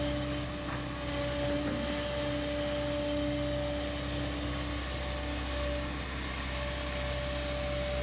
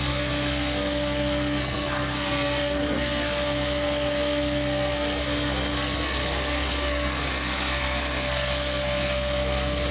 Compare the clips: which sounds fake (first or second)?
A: second